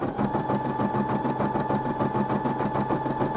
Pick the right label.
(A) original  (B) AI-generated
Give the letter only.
A